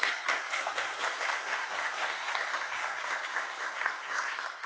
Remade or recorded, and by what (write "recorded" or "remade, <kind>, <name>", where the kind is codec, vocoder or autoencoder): remade, codec, SNAC